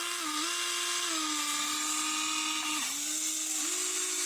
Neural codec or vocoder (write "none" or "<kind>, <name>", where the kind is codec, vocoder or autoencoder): none